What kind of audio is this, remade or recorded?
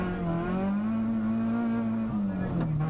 recorded